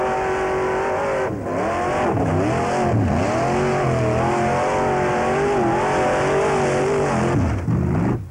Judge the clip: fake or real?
real